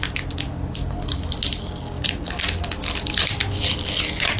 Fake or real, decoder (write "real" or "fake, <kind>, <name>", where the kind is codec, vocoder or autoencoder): real